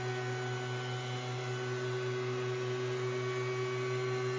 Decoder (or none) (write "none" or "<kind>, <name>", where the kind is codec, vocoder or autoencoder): none